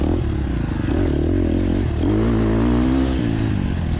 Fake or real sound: real